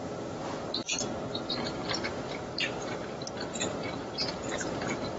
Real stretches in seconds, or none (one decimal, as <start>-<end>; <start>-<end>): 0.0-0.4; 0.9-1.8